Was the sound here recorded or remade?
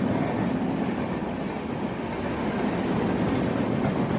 recorded